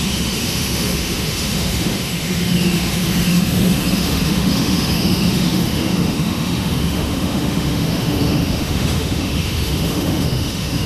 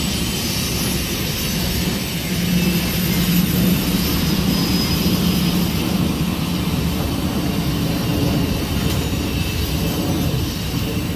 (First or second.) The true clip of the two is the second